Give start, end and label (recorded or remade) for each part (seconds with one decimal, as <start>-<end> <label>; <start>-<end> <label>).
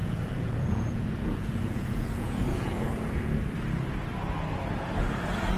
0.0-3.4 remade; 3.4-5.6 recorded